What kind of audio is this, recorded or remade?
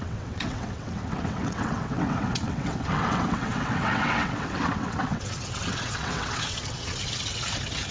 remade